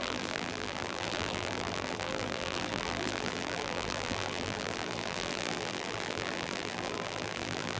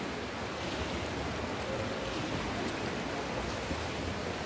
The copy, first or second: first